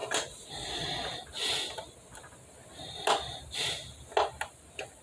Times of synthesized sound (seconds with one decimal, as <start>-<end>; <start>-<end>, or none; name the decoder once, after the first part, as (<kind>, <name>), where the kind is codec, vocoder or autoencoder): none